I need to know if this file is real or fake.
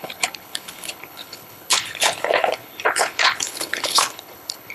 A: fake